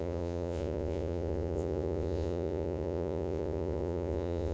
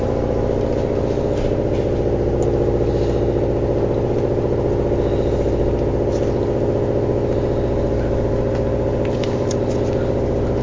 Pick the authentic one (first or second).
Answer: second